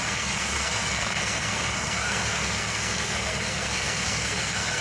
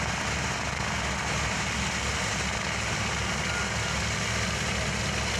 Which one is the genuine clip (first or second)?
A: second